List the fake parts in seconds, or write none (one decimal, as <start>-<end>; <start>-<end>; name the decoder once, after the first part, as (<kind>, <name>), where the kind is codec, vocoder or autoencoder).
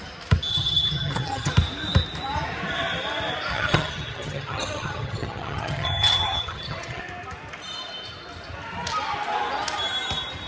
0.5-1.5 (vocoder, HiFi-GAN); 3.5-7.0